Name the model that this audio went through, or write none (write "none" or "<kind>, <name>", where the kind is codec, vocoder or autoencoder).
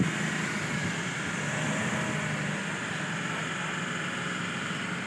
none